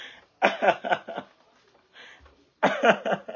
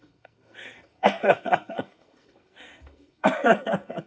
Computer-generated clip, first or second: second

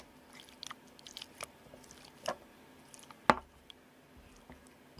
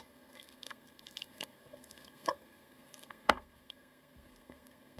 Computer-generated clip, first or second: second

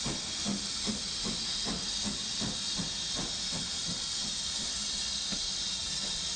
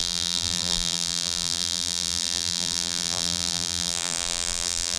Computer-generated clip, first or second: second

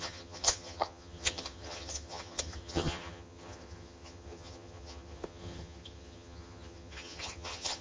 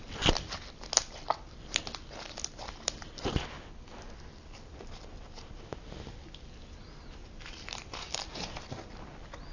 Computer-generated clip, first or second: first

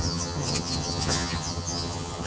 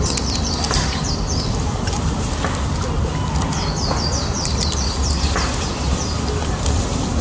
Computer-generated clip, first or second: first